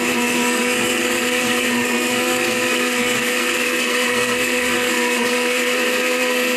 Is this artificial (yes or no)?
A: yes